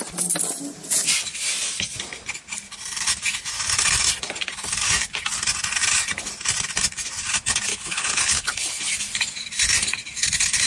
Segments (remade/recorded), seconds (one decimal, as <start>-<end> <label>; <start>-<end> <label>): 0.0-7.7 recorded; 7.7-8.9 remade; 8.9-10.7 recorded